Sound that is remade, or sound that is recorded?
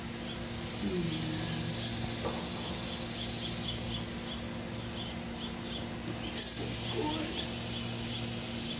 recorded